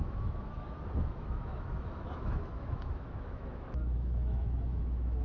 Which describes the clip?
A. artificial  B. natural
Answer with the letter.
A